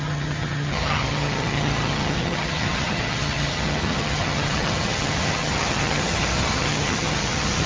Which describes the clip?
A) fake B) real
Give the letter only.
A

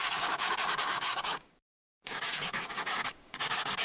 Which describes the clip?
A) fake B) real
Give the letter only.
A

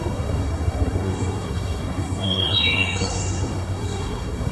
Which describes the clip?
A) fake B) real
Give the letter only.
A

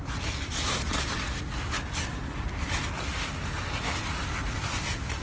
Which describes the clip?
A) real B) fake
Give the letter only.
A